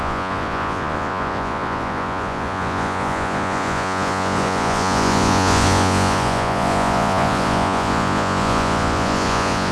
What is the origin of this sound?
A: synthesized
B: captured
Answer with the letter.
A